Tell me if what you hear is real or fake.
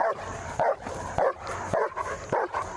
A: fake